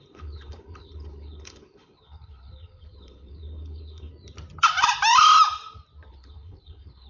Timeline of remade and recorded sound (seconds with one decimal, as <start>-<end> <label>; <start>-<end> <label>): 0.0-4.1 remade; 4.1-6.1 recorded; 6.1-7.1 remade